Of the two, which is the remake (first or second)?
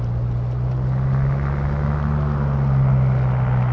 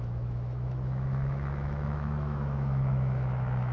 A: second